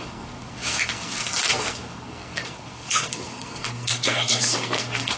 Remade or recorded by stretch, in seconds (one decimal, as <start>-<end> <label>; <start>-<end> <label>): 0.0-5.2 remade